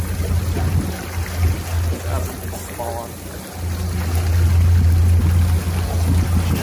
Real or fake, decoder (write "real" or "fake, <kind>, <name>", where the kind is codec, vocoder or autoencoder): real